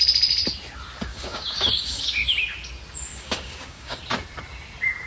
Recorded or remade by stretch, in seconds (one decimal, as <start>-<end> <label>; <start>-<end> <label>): 0.0-1.1 recorded; 1.1-2.0 remade; 2.0-3.1 recorded; 3.1-4.0 remade; 4.0-5.1 recorded